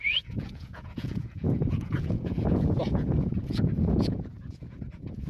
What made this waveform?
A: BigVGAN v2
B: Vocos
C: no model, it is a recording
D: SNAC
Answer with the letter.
B